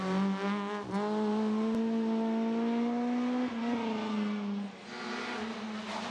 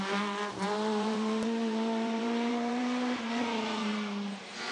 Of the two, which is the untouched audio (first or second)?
first